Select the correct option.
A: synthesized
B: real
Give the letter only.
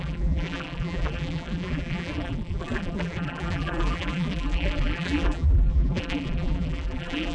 A